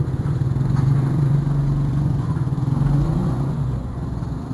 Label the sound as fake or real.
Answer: fake